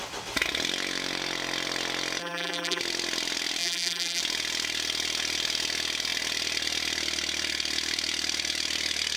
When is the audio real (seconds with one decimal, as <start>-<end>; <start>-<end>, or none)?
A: 0.0-2.2; 2.8-3.6; 4.2-9.2